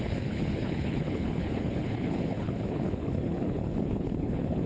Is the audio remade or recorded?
remade